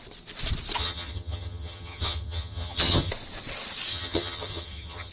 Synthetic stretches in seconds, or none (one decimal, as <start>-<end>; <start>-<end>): 0.8-3.1; 3.9-5.1

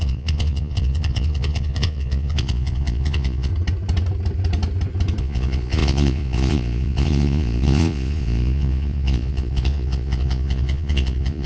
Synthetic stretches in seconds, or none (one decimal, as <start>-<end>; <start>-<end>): 0.0-3.5; 5.2-11.5

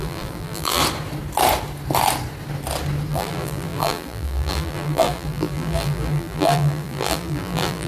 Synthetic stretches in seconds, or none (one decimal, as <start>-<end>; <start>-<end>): 0.0-0.8; 3.1-7.9